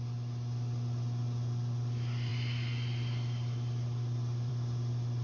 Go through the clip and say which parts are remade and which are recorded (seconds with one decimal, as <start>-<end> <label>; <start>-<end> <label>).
0.0-5.2 recorded